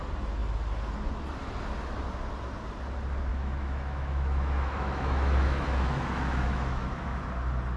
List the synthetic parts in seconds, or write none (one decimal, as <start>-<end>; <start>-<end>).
3.3-7.2